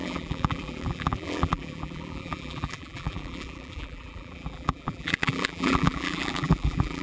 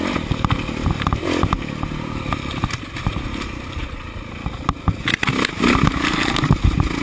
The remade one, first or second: first